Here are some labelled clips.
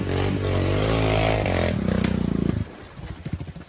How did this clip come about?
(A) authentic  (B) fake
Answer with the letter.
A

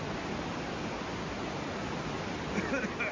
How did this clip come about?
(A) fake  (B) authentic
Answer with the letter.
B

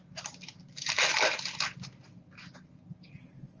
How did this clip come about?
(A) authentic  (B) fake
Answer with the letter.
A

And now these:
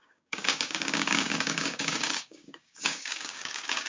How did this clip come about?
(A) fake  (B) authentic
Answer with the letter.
A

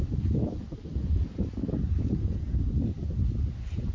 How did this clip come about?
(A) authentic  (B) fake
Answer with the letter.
A